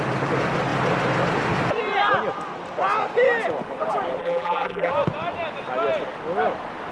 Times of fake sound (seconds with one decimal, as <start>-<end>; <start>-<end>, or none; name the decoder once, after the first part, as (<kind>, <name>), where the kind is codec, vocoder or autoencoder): 4.2-4.9 (vocoder, BigVGAN v2)

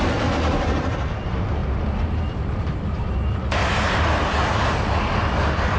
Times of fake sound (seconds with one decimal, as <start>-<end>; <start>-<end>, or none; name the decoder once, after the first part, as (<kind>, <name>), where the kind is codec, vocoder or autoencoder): 0.0-5.8 (vocoder, BigVGAN v2)